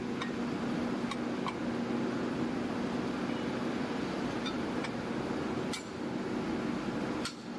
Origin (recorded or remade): recorded